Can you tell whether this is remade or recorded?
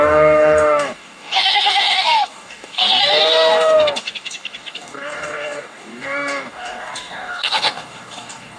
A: remade